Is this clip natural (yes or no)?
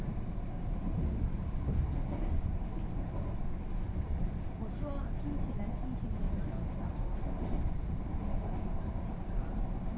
yes